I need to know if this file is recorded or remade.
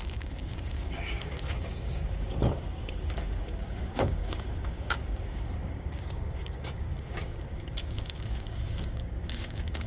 remade